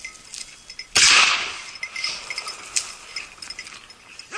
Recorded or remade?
recorded